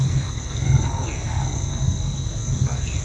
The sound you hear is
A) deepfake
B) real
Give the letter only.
A